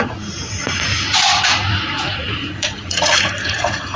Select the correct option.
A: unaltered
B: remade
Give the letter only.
B